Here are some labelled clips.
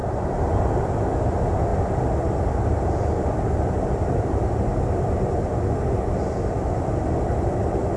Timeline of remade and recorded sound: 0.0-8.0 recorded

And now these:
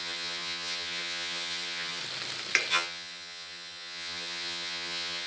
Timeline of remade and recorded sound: 0.0-2.0 remade; 2.0-2.7 recorded; 2.7-5.3 remade

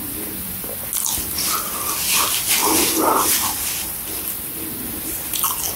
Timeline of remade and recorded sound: 0.0-2.6 recorded; 2.6-3.3 remade; 3.3-5.8 recorded

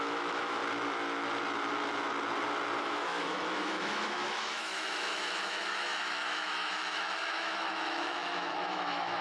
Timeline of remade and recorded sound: 0.0-0.6 remade; 0.6-2.8 recorded; 2.8-9.2 remade

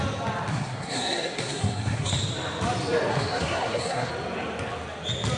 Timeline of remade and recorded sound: 0.0-0.5 recorded; 0.5-2.1 remade; 2.1-3.1 recorded; 3.1-4.1 remade; 4.1-5.4 recorded

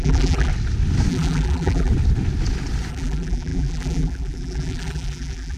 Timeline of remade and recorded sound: 0.0-0.5 remade; 0.5-1.1 recorded; 1.1-1.9 remade; 1.9-2.9 recorded; 2.9-5.6 remade

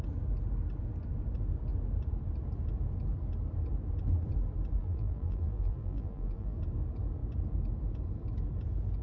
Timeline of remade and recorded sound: 0.0-4.8 recorded; 4.8-6.6 remade; 6.6-9.0 recorded